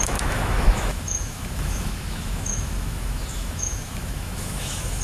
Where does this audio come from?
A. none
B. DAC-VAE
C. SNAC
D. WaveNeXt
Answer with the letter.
B